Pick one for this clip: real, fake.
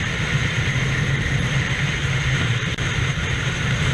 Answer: fake